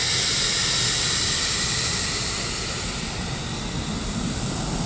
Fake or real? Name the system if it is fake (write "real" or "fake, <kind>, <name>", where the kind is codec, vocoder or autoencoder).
real